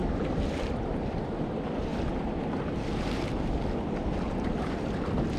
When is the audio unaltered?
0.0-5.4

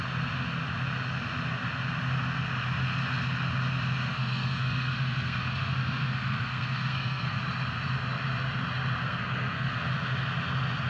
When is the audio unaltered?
0.0-4.1; 7.4-9.0; 9.7-10.9

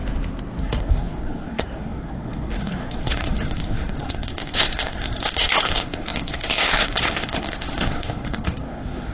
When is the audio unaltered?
0.0-0.6

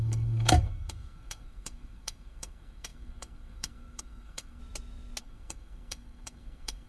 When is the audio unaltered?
4.6-5.2

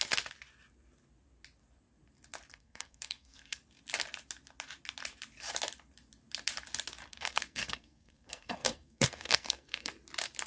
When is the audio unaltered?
0.0-2.5; 3.6-7.1; 9.9-10.5

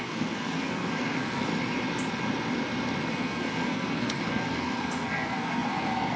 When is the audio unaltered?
1.5-3.1

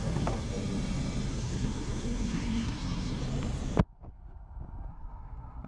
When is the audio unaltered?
0.5-1.3; 3.2-4.9